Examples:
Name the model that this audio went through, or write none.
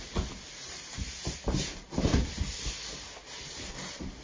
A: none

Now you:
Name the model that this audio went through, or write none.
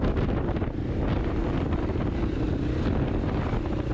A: none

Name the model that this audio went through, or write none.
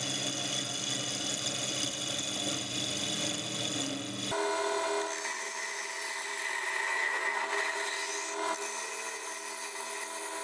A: none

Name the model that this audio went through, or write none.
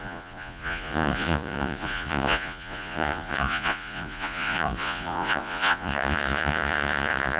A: vocoder, Vocos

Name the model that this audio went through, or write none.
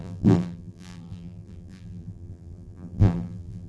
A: vocoder, BigVGAN v2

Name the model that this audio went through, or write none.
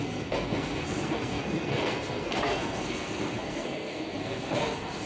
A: codec, SNAC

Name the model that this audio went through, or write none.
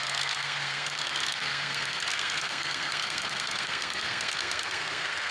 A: codec, SNAC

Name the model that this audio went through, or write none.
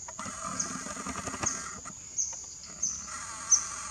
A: none